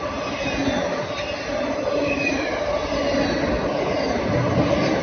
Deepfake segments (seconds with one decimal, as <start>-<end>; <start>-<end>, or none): none